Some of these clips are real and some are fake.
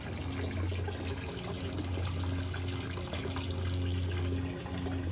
real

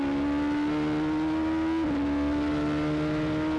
real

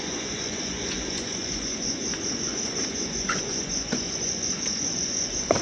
fake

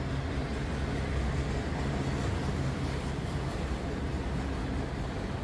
real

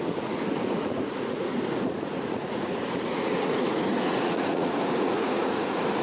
fake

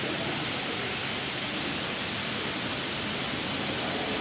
real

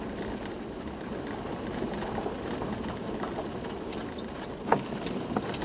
real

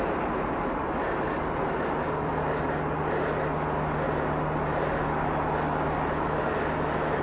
real